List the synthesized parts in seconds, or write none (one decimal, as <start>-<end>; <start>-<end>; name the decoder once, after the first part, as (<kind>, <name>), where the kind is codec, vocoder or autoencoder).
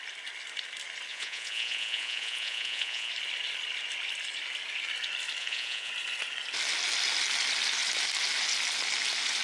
1.1-3.1 (vocoder, Vocos); 5.4-5.9